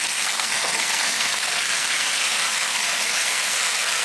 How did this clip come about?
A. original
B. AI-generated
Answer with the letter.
B